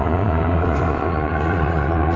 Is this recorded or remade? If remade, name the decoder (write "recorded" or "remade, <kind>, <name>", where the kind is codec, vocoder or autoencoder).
remade, vocoder, Vocos